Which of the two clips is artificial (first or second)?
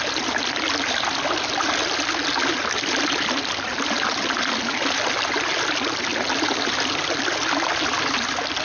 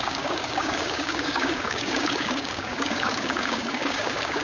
second